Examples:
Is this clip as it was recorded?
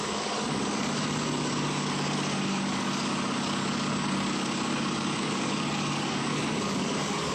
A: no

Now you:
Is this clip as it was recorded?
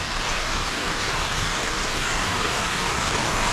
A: no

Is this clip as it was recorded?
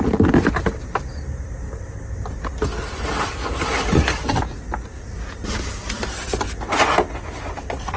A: yes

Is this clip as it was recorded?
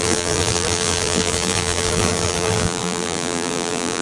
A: no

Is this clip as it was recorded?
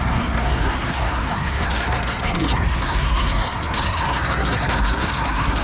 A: no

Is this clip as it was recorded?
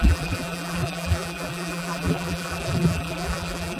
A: no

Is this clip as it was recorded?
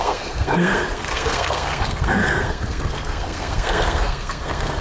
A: no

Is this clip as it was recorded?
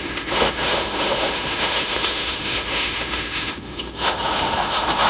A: no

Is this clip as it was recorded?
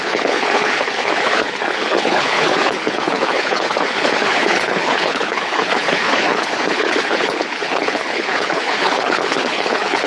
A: no